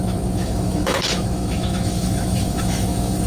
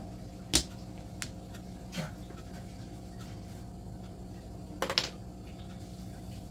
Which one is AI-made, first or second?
first